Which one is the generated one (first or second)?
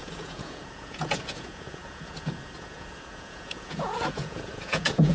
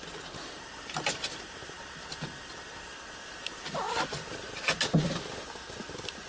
first